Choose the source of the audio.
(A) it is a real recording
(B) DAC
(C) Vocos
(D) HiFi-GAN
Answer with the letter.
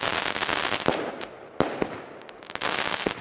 A